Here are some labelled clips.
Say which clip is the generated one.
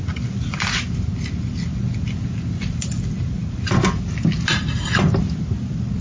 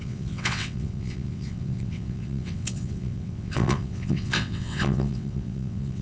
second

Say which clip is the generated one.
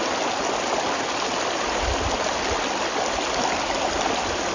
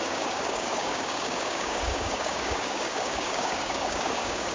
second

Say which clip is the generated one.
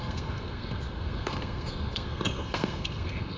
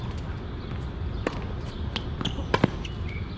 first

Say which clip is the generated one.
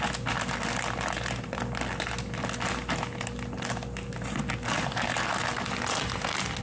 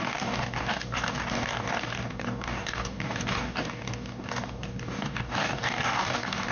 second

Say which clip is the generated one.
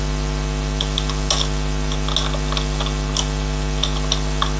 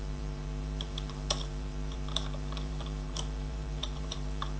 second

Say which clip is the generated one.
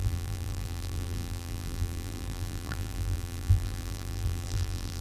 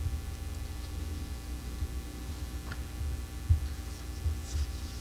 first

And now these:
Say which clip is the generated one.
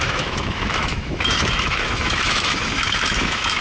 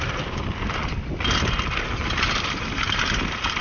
first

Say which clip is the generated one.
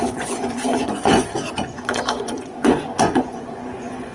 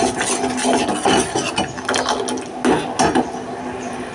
first